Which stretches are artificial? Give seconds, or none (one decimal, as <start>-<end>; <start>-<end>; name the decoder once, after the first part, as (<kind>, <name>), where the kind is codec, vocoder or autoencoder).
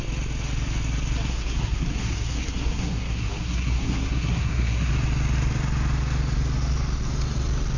1.3-4.9 (codec, SNAC)